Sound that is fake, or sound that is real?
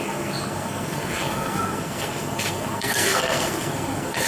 fake